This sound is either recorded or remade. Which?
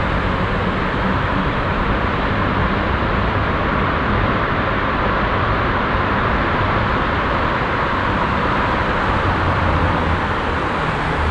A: remade